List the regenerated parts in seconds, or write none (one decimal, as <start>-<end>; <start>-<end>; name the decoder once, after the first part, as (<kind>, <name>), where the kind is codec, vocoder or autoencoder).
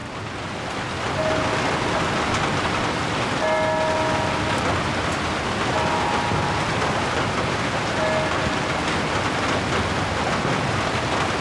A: none